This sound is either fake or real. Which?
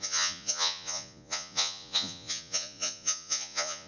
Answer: fake